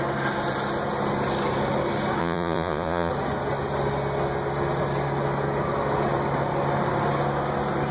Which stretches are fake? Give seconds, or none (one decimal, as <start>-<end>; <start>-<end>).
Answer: 2.2-3.1